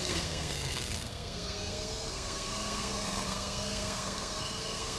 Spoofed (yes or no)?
yes